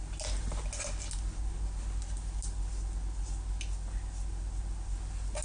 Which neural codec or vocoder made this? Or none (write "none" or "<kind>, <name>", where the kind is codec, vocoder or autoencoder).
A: none